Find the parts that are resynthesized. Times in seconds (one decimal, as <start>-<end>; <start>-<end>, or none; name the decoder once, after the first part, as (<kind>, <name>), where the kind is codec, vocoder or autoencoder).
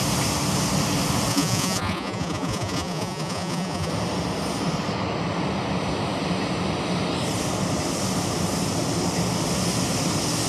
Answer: 1.3-3.9 (vocoder, Vocos)